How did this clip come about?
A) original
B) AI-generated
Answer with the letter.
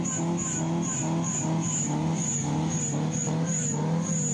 A